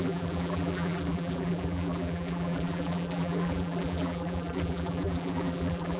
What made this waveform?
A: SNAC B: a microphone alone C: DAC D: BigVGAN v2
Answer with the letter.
D